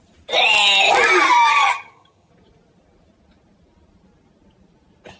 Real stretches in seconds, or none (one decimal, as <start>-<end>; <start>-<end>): 0.0-1.5; 2.3-5.2